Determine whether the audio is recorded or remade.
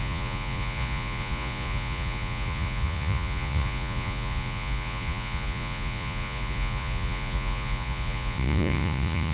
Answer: remade